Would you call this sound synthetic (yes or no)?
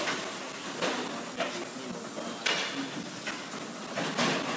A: no